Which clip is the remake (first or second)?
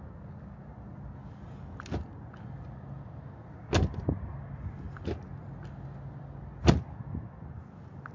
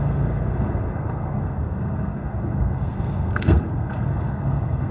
second